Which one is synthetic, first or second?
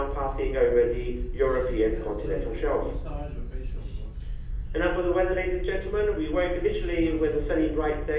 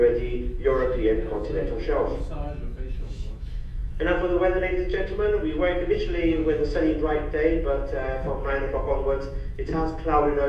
second